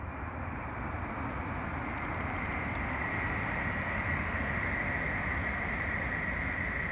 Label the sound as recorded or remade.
recorded